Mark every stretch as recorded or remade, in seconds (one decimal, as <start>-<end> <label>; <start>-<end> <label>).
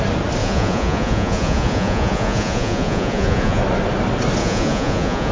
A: 0.0-0.4 recorded; 0.4-3.6 remade; 3.6-4.4 recorded; 4.4-5.3 remade